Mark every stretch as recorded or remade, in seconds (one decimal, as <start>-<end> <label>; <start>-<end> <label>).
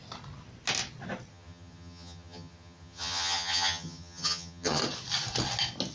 0.0-1.3 recorded; 1.3-4.8 remade; 4.8-5.9 recorded